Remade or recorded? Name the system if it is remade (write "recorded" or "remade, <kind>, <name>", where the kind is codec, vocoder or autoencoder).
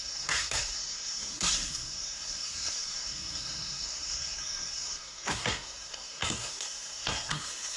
remade, codec, SNAC